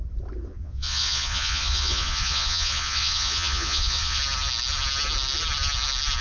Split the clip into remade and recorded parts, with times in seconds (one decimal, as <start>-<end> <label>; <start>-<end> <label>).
0.0-0.5 recorded; 0.5-4.2 remade; 4.2-6.2 recorded